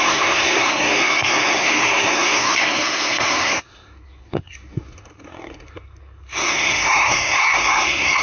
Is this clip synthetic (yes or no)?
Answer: yes